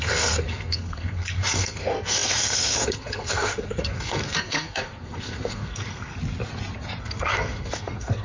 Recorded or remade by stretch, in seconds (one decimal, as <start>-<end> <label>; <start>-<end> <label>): 0.0-6.1 remade; 6.1-7.0 recorded; 7.0-8.2 remade